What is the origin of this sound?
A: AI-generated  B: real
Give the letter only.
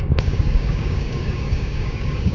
A